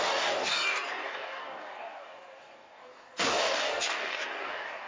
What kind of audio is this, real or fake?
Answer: fake